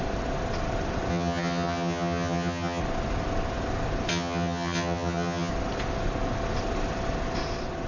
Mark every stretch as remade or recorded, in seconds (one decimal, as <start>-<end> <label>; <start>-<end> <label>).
0.0-1.1 recorded; 1.1-2.8 remade; 2.8-4.1 recorded; 4.1-5.5 remade; 5.5-7.9 recorded